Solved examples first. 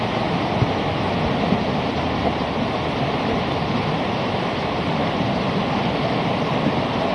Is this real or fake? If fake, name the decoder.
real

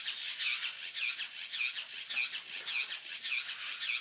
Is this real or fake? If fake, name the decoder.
real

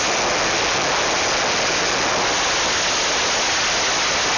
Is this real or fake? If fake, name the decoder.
real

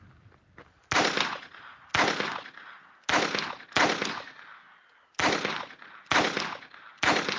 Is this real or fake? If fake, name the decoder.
real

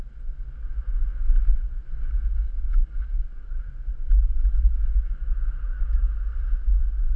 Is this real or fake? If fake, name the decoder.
real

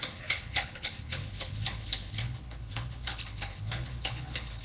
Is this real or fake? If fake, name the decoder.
fake, codec, HILCodec